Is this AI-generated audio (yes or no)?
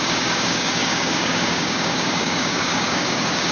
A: yes